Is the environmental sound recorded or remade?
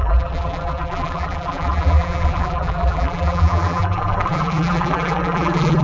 remade